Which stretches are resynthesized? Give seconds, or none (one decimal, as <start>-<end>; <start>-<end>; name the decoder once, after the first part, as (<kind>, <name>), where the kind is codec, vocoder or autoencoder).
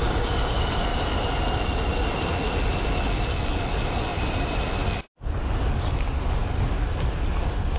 none